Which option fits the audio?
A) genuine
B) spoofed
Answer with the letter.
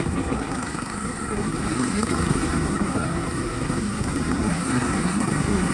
B